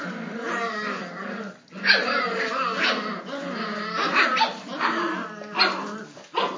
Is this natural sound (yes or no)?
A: yes